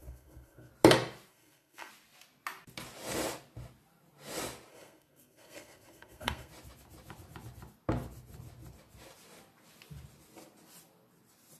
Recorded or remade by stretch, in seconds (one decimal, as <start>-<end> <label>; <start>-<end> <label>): 0.0-0.7 remade; 0.7-1.3 recorded; 1.3-1.9 remade; 1.9-4.7 recorded; 4.7-6.5 remade; 6.5-11.6 recorded